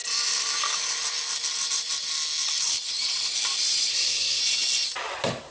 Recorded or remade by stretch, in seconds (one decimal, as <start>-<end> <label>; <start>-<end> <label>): 0.0-3.9 recorded; 3.9-4.4 remade; 4.4-5.5 recorded